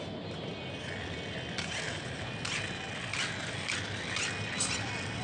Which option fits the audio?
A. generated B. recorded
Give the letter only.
B